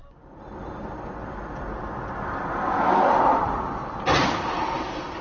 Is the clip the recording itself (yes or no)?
yes